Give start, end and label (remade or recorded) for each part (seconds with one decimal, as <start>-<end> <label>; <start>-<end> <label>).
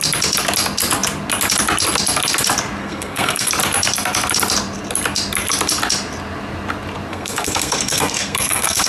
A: 0.0-2.8 recorded; 2.8-3.5 remade; 3.5-7.1 recorded; 7.1-8.9 remade